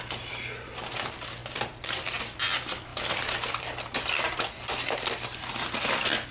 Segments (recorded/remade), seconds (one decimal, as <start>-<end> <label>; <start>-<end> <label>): 0.0-6.3 recorded